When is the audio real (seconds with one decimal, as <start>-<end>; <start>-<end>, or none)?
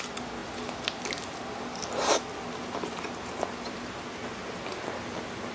0.0-5.5